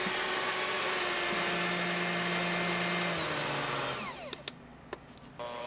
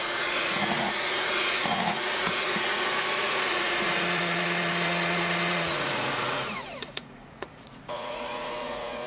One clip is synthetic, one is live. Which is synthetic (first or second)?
second